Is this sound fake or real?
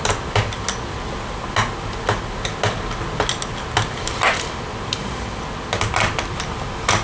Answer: real